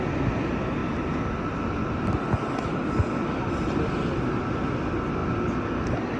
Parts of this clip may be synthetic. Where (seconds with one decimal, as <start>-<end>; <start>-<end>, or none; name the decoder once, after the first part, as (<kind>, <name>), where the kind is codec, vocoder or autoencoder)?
none